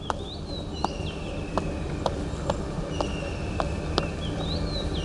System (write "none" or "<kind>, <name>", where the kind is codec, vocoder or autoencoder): none